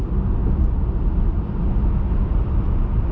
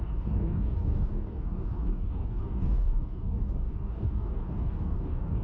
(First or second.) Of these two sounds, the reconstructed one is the second